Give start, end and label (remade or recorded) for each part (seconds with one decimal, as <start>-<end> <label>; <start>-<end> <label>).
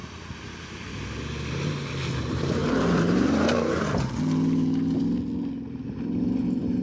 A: 0.0-2.6 recorded; 2.6-4.1 remade; 4.1-6.8 recorded